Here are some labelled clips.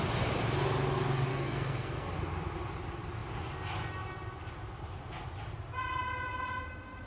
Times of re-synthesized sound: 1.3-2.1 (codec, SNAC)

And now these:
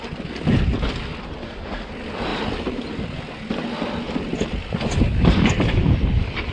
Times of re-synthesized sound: none

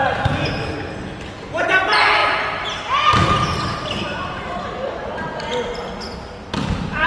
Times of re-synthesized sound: none

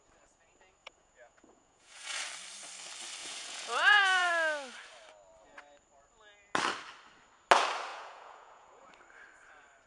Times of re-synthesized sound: 0.8-2.3 (vocoder, Vocos); 3.2-4.3; 7.9-8.9